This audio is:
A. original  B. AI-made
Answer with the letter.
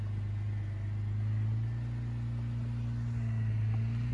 A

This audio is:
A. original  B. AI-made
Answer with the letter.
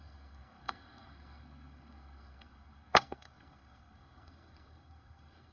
B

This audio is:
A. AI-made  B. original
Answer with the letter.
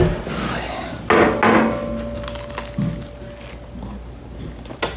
B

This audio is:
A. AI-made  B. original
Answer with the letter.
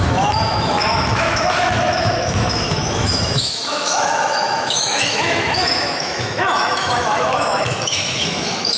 A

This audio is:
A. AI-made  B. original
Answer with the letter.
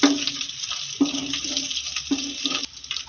B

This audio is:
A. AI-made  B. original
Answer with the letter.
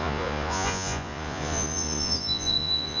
A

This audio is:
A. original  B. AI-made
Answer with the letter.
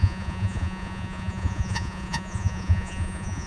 B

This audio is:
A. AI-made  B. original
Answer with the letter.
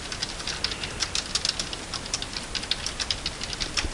B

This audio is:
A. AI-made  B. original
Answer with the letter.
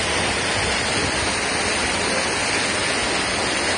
B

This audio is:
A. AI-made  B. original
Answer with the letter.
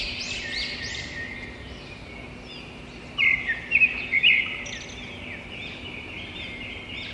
B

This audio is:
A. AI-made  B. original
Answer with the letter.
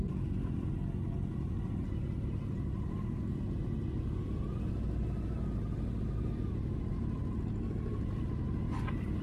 B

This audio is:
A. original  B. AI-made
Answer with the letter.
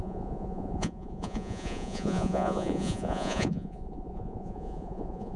B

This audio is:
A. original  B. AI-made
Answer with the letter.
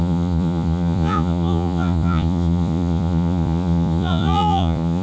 B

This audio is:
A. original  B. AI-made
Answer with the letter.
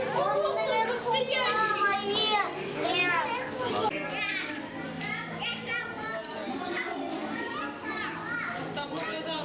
A